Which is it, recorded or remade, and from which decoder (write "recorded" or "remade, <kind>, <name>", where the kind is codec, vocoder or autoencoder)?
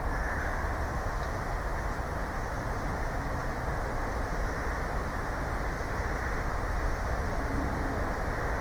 recorded